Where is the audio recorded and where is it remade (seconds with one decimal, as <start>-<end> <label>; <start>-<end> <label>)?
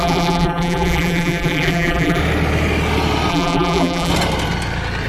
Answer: 0.0-2.2 remade; 2.2-3.3 recorded; 3.3-4.1 remade; 4.1-5.1 recorded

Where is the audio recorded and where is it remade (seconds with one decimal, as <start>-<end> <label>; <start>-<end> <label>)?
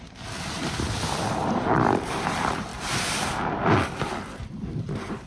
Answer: 0.0-2.7 remade; 2.7-4.2 recorded; 4.2-5.3 remade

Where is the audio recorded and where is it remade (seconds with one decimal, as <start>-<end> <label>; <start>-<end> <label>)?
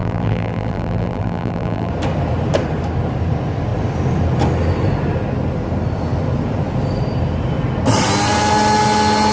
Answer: 0.0-1.9 remade; 1.9-9.3 recorded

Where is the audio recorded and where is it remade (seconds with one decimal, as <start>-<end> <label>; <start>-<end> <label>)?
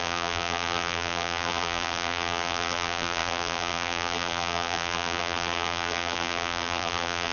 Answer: 0.0-7.3 remade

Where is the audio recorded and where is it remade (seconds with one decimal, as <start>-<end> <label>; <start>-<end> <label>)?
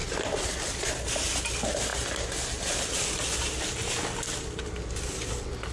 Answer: 0.0-5.7 recorded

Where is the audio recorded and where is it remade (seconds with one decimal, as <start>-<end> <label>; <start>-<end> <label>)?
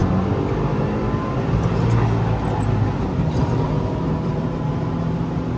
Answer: 0.0-3.4 recorded; 3.4-5.6 remade